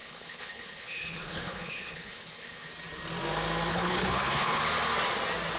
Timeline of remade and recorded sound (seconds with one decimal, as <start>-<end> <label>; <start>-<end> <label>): 0.0-2.7 remade; 2.7-3.7 recorded; 3.7-4.6 remade; 4.6-5.6 recorded